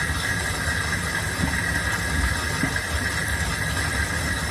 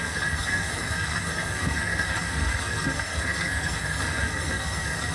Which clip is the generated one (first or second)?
second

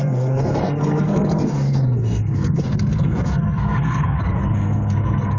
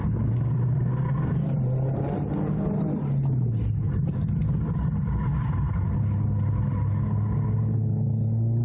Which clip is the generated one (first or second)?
first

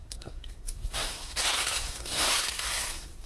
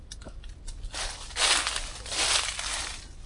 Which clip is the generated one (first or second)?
first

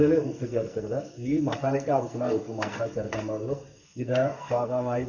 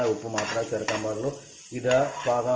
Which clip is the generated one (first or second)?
first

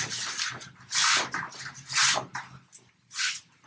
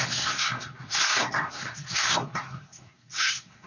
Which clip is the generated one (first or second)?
second